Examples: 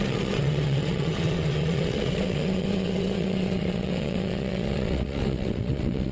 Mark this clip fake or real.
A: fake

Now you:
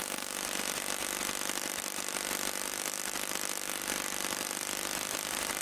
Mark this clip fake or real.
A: fake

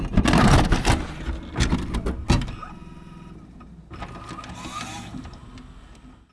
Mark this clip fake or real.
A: real